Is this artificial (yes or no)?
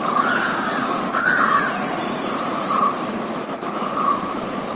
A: yes